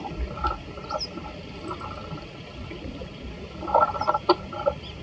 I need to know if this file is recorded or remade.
recorded